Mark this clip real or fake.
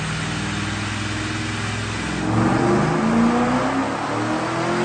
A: real